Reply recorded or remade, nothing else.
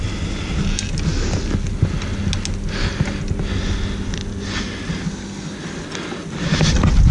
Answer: recorded